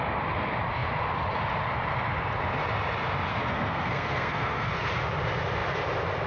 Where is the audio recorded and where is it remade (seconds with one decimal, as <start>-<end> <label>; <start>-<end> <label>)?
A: 0.0-3.3 recorded; 3.3-4.9 remade; 4.9-6.3 recorded